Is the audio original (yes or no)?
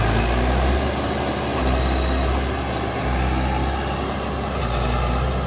yes